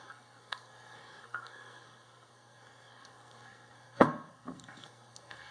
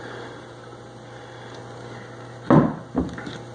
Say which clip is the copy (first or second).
first